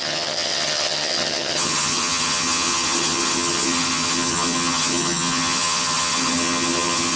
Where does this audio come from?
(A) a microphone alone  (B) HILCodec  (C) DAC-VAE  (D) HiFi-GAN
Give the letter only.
D